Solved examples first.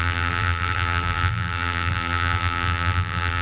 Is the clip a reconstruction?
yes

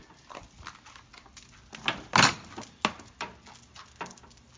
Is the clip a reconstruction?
no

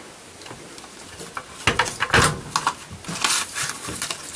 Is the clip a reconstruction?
no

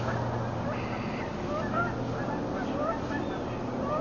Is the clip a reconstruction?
no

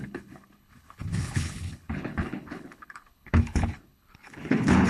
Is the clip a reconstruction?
yes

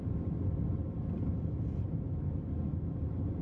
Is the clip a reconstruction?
no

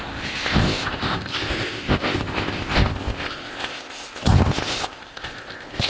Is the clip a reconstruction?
yes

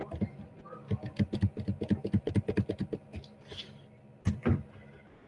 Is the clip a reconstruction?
no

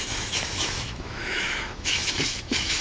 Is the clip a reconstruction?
yes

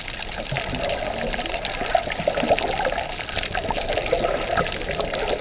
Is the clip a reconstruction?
no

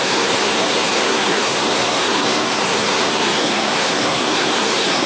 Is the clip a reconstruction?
yes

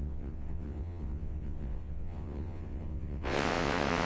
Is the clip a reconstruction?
yes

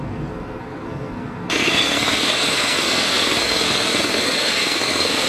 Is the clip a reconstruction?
yes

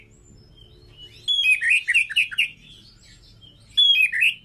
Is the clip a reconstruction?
no